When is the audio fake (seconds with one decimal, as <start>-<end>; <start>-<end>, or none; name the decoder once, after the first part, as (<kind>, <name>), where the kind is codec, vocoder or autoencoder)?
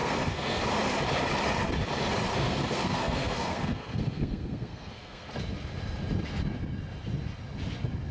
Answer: 0.0-0.6 (codec, SNAC); 2.3-5.3